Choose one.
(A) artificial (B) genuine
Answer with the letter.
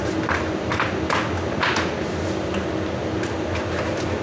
B